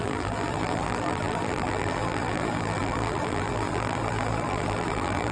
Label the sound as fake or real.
fake